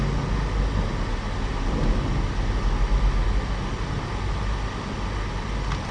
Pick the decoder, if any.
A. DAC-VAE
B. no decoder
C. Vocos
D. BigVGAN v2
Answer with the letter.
B